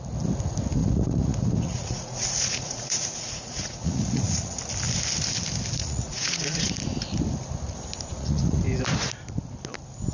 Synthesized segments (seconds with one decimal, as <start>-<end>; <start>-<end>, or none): 0.8-4.6; 5.8-6.7; 8.1-8.6